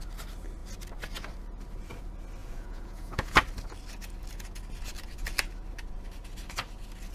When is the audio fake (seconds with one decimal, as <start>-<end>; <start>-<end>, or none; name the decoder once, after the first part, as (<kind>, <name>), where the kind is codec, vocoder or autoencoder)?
2.4-3.4 (vocoder, Vocos)